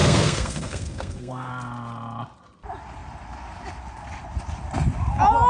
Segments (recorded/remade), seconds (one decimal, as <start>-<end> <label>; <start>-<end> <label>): 0.0-1.5 remade; 1.5-5.5 recorded